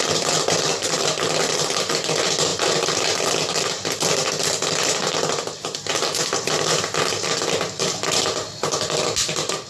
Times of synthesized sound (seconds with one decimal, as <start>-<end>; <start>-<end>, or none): none